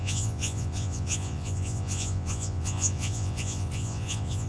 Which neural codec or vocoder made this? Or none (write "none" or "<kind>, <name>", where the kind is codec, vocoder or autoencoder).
vocoder, Vocos